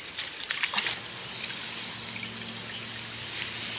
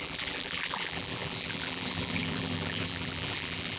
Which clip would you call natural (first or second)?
first